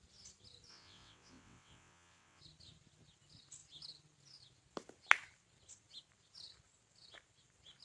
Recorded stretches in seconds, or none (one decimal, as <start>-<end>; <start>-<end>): 0.0-0.7; 2.4-7.8